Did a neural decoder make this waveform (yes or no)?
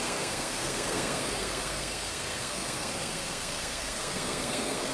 yes